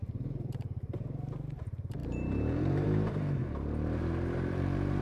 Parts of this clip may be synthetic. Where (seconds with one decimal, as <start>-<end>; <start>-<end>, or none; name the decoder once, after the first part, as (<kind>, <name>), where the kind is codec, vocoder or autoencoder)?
0.0-5.0 (vocoder, BigVGAN v2)